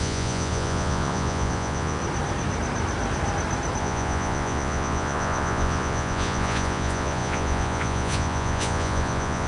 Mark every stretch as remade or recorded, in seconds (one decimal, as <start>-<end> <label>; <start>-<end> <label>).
0.0-2.0 remade; 2.0-3.8 recorded; 3.8-9.5 remade